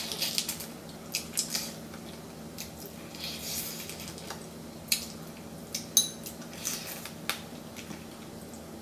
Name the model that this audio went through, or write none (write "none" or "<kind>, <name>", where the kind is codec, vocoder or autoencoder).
none